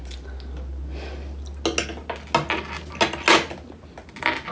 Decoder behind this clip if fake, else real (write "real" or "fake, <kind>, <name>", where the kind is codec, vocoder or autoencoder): real